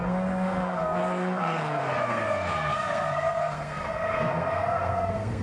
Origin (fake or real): fake